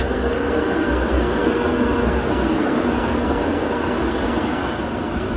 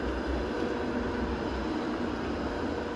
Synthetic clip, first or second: first